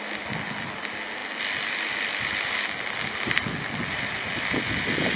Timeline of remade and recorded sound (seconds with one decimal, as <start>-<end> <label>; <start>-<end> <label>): 0.0-5.2 recorded